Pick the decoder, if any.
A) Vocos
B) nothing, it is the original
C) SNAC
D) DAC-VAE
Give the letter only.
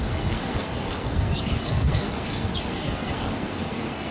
C